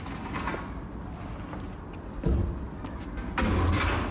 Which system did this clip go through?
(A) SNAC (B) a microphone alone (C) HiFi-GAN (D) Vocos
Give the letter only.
B